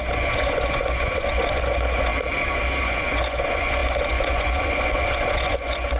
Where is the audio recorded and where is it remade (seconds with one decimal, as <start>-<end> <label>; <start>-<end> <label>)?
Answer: 0.0-2.1 remade; 2.1-2.8 recorded; 2.8-6.0 remade